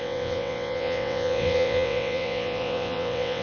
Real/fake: fake